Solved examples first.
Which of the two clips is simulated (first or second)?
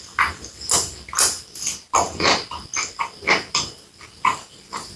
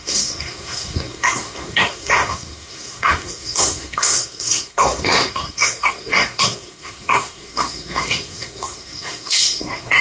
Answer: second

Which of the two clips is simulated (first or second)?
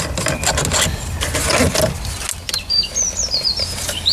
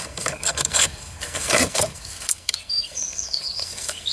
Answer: second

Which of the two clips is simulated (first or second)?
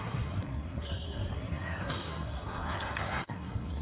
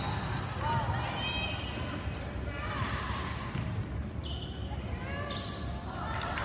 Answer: first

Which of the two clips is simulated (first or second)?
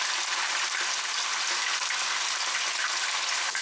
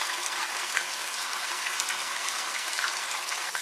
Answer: second